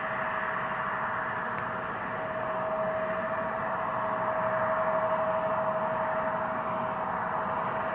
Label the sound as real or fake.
real